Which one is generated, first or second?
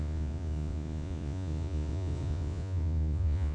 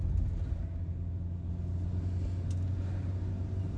first